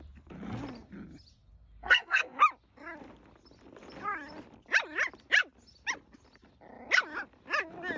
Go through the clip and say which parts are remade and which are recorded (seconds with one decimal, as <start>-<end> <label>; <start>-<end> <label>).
0.0-1.8 recorded; 1.8-2.4 remade; 2.4-8.0 recorded

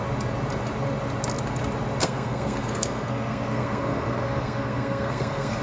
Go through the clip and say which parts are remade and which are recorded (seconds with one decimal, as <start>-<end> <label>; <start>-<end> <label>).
0.0-2.0 recorded; 2.0-5.6 remade

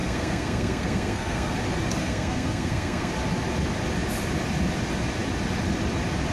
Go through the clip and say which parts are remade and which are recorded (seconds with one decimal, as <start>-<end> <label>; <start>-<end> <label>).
0.0-1.6 remade; 1.6-2.0 recorded; 2.0-3.1 remade; 3.1-6.3 recorded

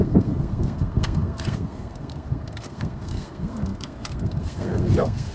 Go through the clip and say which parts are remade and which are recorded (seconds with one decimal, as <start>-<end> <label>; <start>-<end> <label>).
0.0-5.3 remade

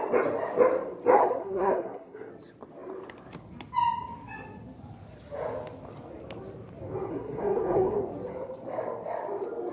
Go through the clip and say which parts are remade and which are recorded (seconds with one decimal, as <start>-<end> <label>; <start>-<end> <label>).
0.0-1.2 recorded; 1.2-2.3 remade; 2.3-7.1 recorded; 7.1-8.0 remade; 8.0-9.7 recorded

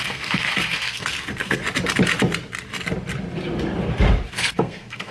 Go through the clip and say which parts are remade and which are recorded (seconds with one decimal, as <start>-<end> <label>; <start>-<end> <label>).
0.0-1.6 remade; 1.6-4.3 recorded; 4.3-5.1 remade